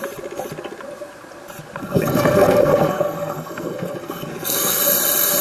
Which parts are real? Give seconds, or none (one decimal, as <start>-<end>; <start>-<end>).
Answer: 0.0-1.8; 4.8-5.4